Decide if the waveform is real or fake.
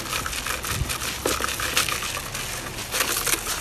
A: real